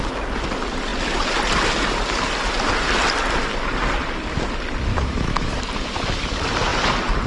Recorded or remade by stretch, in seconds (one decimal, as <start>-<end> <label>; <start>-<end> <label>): 0.0-4.9 recorded; 4.9-5.6 remade; 5.6-7.3 recorded